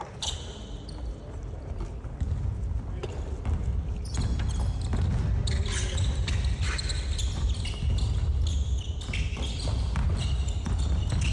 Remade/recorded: recorded